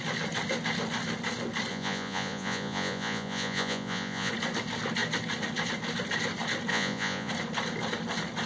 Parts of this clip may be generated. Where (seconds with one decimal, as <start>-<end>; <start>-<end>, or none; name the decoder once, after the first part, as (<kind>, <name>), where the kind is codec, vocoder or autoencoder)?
1.7-4.3 (vocoder, Vocos); 6.7-7.3